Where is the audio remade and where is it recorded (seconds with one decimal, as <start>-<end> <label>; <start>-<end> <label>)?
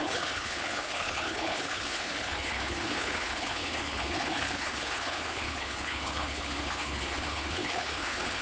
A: 0.0-8.4 remade